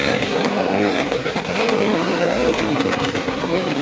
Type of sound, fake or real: fake